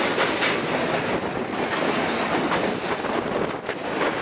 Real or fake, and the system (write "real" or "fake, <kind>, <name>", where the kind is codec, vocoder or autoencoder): real